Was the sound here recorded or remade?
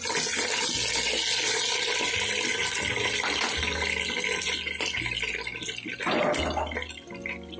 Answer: recorded